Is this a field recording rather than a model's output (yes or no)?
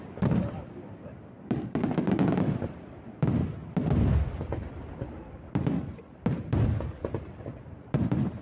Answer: no